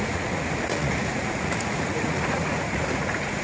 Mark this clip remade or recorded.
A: remade